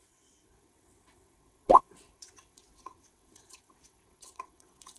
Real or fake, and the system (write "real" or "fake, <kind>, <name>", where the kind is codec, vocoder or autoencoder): fake, vocoder, WaveNeXt